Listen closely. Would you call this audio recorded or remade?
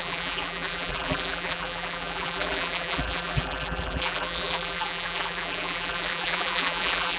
remade